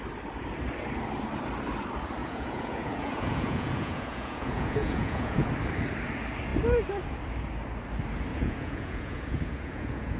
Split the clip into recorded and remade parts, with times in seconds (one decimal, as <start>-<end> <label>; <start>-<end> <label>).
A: 0.0-2.2 recorded; 2.2-5.5 remade; 5.5-8.3 recorded; 8.3-10.2 remade